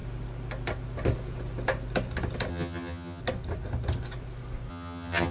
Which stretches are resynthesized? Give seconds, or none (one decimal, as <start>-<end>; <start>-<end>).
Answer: 2.5-3.2; 4.7-5.3